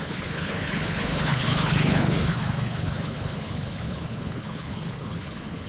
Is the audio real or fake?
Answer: fake